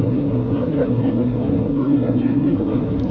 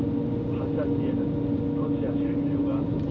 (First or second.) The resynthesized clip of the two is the first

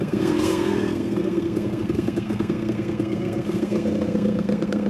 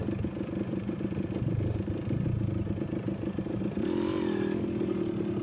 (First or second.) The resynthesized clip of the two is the first